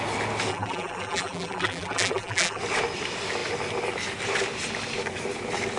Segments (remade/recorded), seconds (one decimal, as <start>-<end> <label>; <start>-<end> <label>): 0.0-0.5 recorded; 0.5-2.6 remade; 2.6-5.8 recorded